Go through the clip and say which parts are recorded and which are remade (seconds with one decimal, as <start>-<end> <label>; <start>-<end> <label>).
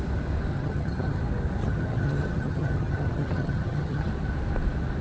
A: 0.0-0.5 recorded; 0.5-1.2 remade; 1.2-1.6 recorded; 1.6-4.1 remade; 4.1-5.0 recorded